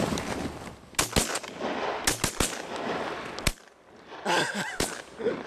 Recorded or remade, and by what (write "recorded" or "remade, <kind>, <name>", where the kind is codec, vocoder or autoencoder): recorded